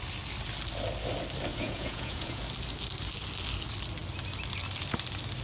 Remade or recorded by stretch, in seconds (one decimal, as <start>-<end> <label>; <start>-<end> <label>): 0.0-1.5 recorded; 1.5-2.4 remade; 2.4-5.4 recorded